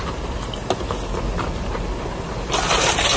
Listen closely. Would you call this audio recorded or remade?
recorded